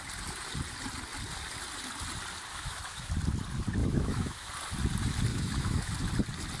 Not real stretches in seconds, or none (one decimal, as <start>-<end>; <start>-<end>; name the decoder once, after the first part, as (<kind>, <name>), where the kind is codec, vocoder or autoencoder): 2.5-3.1 (autoencoder, DAC-VAE); 3.8-4.5; 5.3-5.9